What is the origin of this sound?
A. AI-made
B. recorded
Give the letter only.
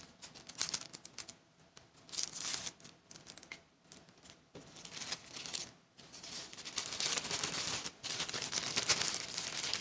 B